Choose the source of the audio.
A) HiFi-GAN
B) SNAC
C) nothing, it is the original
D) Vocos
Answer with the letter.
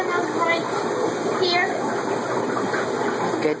C